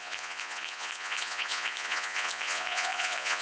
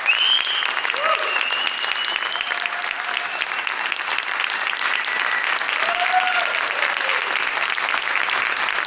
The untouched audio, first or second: second